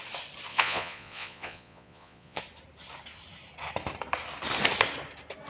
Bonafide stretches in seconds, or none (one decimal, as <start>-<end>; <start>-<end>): 0.0-0.5; 2.4-5.5